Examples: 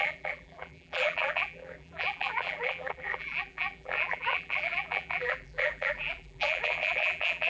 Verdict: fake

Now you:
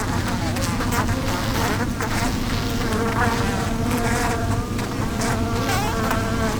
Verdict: real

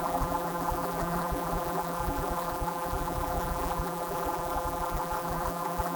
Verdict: fake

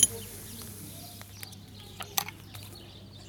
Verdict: real